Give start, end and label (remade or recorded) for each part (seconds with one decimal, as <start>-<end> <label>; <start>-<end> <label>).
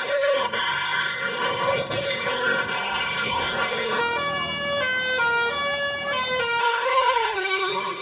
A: 0.0-4.0 remade; 4.0-6.6 recorded; 6.6-8.0 remade